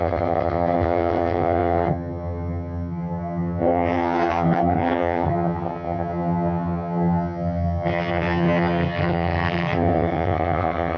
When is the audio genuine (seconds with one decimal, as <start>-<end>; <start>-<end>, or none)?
none